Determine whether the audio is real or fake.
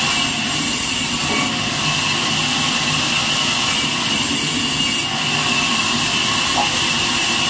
real